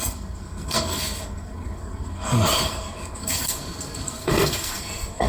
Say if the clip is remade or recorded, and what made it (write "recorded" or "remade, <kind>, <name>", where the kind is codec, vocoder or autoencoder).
remade, codec, SNAC